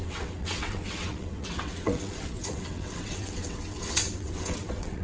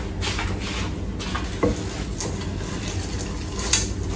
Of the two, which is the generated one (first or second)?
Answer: first